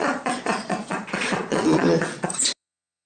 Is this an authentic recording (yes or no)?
no